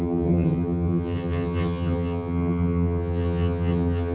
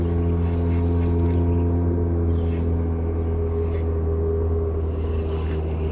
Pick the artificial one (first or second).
first